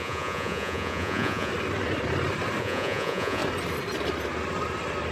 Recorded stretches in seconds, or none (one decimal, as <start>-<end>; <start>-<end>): 1.5-2.6; 3.4-5.1